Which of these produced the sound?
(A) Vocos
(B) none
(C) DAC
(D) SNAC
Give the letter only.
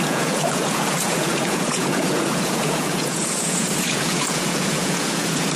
A